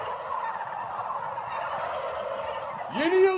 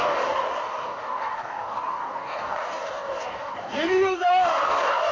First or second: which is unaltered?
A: first